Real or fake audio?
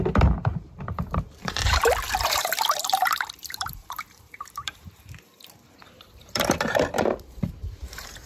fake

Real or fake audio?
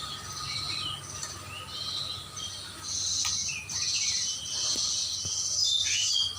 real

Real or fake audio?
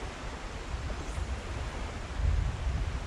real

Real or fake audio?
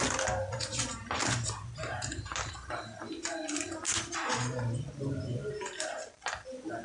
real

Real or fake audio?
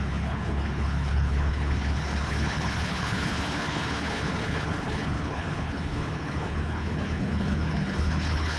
fake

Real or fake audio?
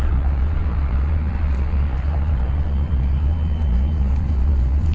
fake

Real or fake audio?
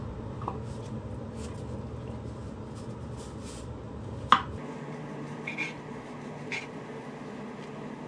real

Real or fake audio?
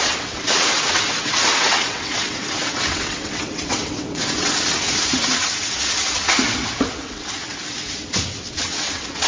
fake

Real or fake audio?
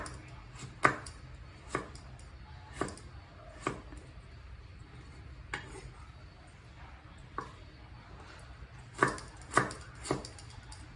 real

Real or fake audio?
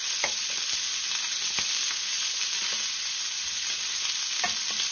real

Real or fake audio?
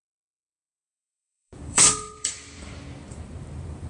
fake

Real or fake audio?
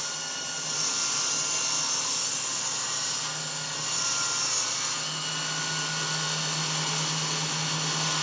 real